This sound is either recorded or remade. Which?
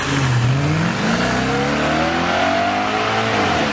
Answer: recorded